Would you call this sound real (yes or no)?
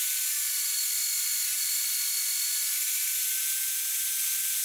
no